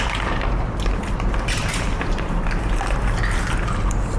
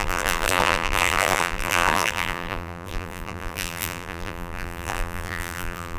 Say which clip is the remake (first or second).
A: second